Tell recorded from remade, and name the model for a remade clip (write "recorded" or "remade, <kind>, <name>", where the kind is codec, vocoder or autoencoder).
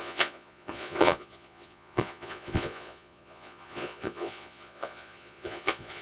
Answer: remade, vocoder, Vocos